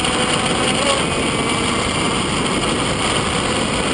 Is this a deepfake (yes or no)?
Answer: no